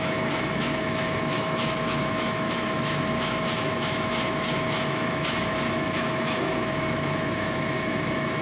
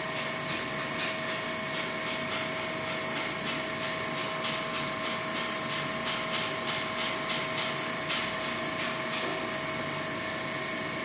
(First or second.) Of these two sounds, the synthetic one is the first